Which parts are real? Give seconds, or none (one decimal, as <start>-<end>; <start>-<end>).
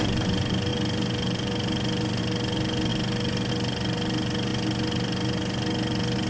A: 0.0-6.3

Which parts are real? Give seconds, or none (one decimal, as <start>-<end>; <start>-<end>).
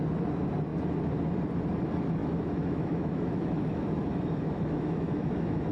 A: 0.0-2.2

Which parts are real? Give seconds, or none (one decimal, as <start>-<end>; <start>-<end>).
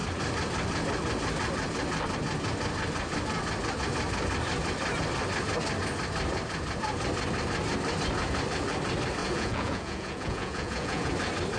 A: 0.0-9.2; 11.1-11.6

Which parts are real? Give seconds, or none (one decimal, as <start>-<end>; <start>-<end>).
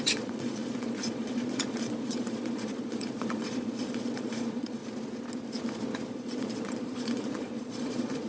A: 4.8-6.1